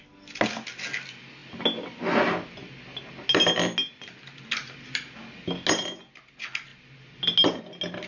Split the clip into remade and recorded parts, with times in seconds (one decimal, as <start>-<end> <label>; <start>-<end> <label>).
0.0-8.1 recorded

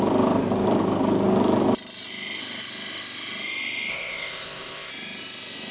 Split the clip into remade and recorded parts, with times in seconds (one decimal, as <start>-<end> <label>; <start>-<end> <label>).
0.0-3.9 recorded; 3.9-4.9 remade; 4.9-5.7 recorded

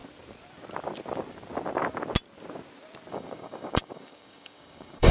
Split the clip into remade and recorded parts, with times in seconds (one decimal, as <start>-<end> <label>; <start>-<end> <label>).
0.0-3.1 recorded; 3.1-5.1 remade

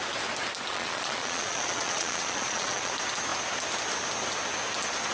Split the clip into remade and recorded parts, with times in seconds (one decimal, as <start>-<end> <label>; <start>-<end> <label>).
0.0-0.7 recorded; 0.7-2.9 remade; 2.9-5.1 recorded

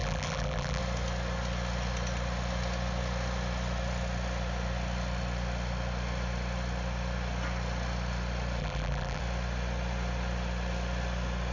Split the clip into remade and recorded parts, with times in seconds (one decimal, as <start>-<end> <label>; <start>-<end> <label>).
0.0-0.8 remade; 0.8-8.6 recorded; 8.6-9.2 remade; 9.2-11.5 recorded

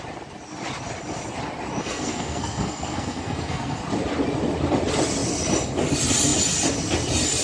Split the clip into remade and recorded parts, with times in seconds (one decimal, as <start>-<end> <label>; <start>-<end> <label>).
0.0-1.8 recorded; 1.8-3.8 remade; 3.8-7.4 recorded

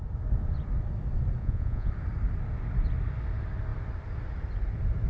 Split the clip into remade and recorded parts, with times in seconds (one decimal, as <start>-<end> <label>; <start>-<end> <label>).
0.0-1.4 recorded; 1.4-1.9 remade; 1.9-5.1 recorded

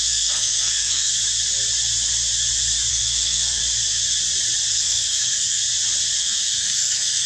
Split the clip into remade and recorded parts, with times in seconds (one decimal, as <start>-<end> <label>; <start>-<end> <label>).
0.0-1.1 remade; 1.1-2.9 recorded; 2.9-3.6 remade; 3.6-4.7 recorded; 4.7-5.6 remade; 5.6-6.2 recorded; 6.2-7.3 remade